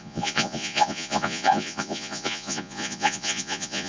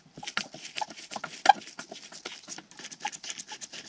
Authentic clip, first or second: second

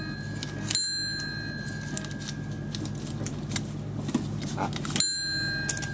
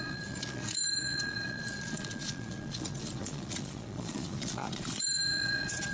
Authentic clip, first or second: first